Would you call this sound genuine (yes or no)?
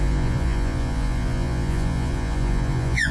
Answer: no